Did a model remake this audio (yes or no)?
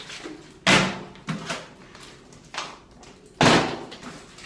no